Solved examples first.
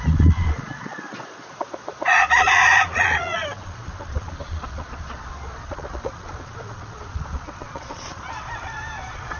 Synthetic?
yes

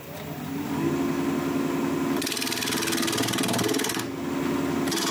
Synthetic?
no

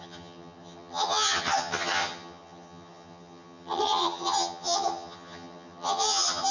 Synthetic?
yes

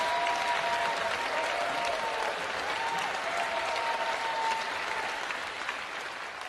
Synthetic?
no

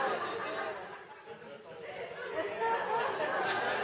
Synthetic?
no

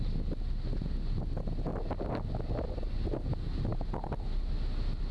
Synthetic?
no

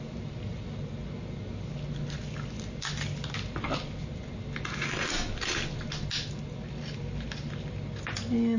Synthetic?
no